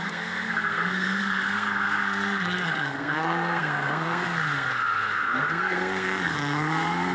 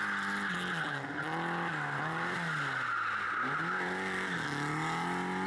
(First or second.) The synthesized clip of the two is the first